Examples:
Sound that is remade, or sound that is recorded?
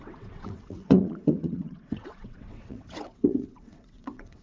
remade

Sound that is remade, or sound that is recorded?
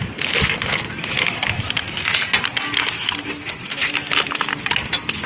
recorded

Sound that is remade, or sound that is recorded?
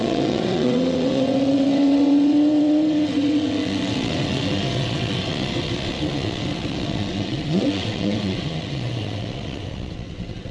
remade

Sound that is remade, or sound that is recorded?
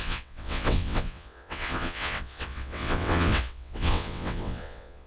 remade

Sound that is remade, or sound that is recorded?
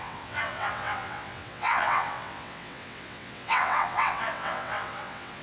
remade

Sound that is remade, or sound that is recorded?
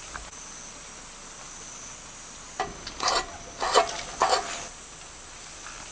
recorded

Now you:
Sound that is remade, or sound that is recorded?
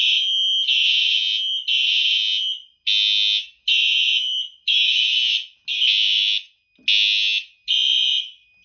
recorded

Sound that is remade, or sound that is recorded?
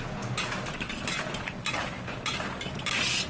recorded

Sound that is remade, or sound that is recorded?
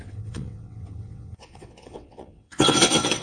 remade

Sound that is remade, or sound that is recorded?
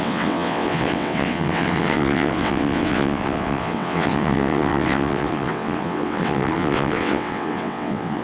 remade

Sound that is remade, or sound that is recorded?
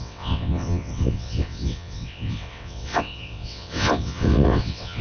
remade